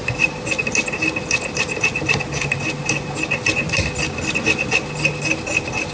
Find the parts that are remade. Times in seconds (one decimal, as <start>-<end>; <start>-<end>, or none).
none